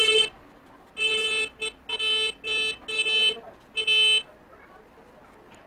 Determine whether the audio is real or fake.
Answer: real